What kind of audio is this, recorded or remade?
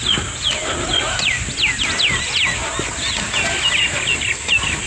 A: recorded